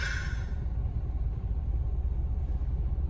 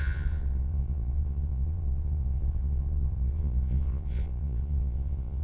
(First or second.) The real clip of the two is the first